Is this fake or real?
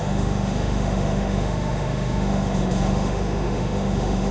fake